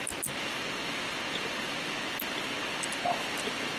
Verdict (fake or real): real